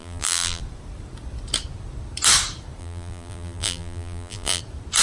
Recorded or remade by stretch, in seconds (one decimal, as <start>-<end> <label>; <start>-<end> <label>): 0.0-0.6 remade; 0.6-2.8 recorded; 2.8-4.6 remade; 4.6-5.0 recorded